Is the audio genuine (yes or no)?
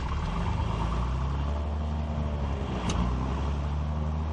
yes